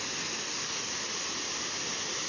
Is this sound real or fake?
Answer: real